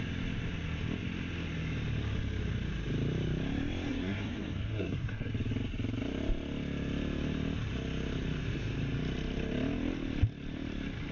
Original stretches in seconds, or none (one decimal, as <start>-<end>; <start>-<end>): 0.0-3.9; 5.3-11.1